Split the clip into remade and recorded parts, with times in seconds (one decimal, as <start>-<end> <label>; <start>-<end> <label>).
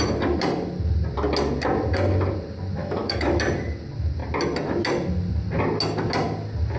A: 0.0-2.8 recorded; 2.8-3.4 remade; 3.4-6.8 recorded